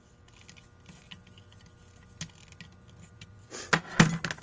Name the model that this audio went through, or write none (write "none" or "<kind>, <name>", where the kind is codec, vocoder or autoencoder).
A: none